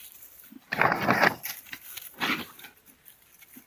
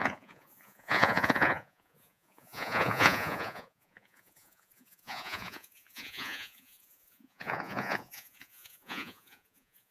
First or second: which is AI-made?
second